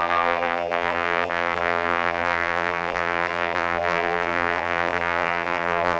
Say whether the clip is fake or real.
fake